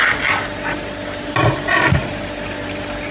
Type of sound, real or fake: real